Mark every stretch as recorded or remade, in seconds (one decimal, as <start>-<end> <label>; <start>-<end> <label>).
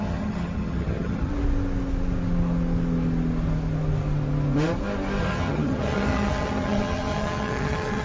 0.0-1.3 remade; 1.3-5.2 recorded; 5.2-8.0 remade